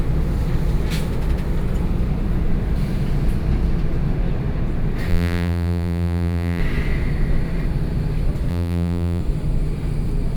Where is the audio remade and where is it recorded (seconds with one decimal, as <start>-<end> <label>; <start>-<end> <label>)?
0.0-5.1 recorded; 5.1-6.6 remade; 6.6-8.5 recorded; 8.5-9.2 remade; 9.2-10.4 recorded